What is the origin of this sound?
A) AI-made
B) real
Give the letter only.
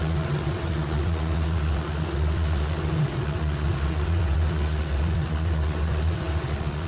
A